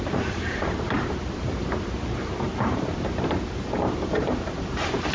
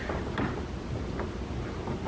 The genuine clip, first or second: second